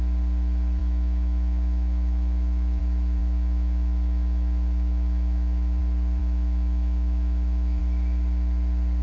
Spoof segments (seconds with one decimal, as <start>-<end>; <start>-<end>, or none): 0.8-2.8; 3.2-5.8; 6.2-7.8